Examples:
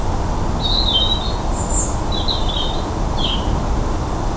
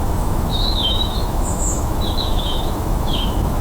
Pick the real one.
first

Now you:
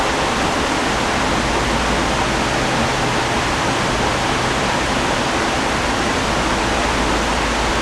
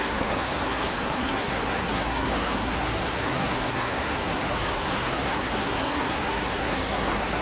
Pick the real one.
first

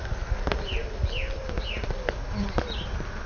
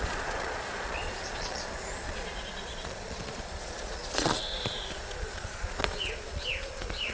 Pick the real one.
first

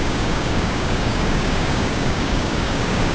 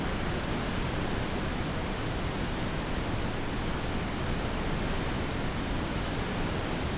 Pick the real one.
second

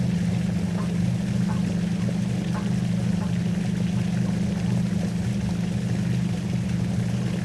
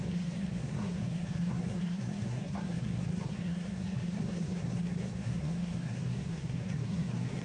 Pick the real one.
first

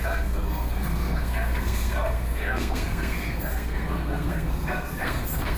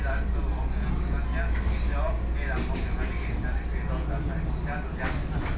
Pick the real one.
second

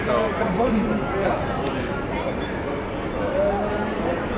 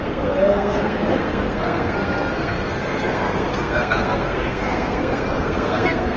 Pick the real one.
first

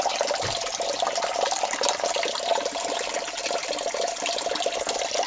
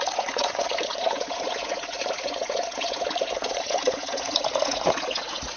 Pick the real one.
first